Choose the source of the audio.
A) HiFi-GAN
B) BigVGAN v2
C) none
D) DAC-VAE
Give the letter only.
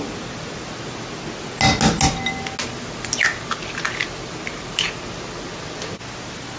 C